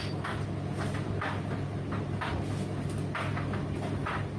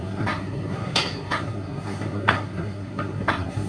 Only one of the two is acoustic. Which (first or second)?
first